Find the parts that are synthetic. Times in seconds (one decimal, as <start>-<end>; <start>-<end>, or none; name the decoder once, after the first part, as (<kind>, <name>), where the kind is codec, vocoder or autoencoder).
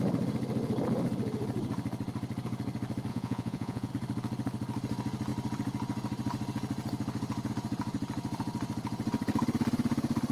3.1-3.9 (vocoder, Vocos)